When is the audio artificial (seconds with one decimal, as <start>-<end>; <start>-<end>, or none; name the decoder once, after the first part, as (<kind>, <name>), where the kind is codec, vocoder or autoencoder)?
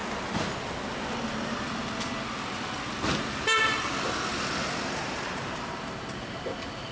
none